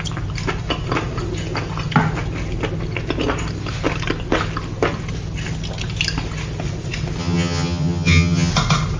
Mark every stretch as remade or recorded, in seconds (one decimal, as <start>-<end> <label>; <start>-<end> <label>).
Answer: 0.0-7.2 recorded; 7.2-8.5 remade; 8.5-9.0 recorded